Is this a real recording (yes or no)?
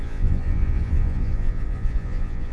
no